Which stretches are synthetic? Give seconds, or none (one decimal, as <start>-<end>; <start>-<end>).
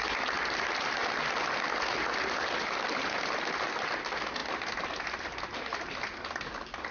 none